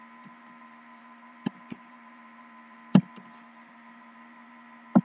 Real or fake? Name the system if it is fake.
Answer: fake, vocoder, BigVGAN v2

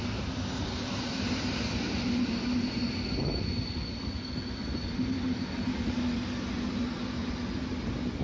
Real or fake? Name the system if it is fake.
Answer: real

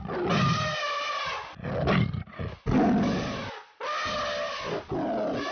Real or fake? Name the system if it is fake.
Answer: real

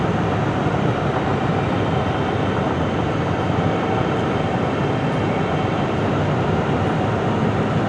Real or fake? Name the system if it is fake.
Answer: fake, vocoder, BigVGAN v2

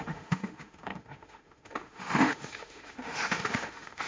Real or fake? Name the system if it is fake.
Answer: fake, autoencoder, DAC-VAE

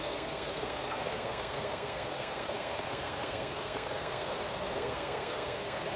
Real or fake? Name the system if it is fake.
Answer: fake, codec, SNAC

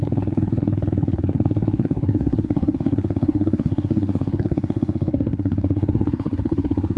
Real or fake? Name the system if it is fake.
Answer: fake, codec, SNAC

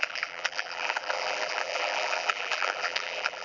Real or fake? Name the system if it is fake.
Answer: fake, vocoder, BigVGAN v2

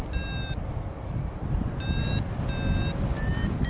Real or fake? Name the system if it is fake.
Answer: real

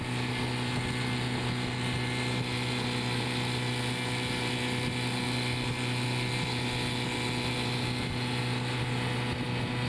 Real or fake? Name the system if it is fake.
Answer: real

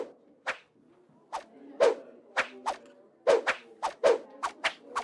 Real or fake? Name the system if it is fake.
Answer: real